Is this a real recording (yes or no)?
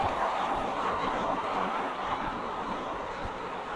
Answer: no